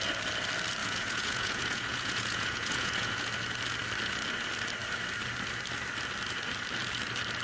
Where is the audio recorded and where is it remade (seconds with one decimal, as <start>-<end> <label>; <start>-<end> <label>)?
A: 0.0-0.8 recorded; 0.8-3.3 remade; 3.3-7.4 recorded

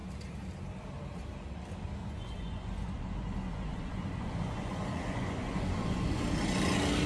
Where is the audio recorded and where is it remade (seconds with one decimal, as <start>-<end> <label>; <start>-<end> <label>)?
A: 0.0-2.0 recorded; 2.0-6.2 remade; 6.2-7.1 recorded

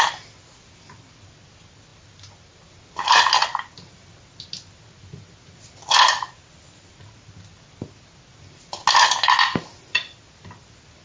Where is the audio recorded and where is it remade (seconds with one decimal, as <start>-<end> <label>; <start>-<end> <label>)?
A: 0.0-11.0 recorded

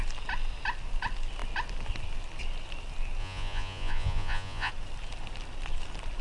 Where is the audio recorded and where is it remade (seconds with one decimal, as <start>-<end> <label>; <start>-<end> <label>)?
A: 0.0-3.2 recorded; 3.2-4.7 remade; 4.7-6.2 recorded

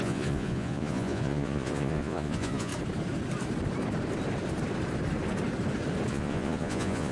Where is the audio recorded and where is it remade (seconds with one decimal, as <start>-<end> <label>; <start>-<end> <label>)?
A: 0.0-2.7 remade; 2.7-6.1 recorded; 6.1-7.1 remade

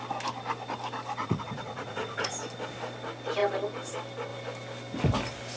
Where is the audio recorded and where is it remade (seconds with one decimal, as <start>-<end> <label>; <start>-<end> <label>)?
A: 0.0-1.2 recorded; 1.2-2.3 remade; 2.3-5.6 recorded

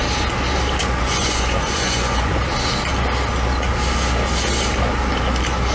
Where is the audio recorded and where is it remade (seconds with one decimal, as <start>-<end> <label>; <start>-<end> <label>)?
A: 0.0-0.8 recorded; 0.8-2.4 remade; 2.4-5.7 recorded

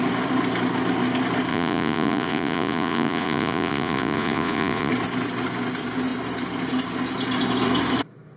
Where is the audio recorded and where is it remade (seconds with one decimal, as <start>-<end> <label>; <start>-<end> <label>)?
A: 0.0-1.5 recorded; 1.5-4.9 remade; 4.9-8.4 recorded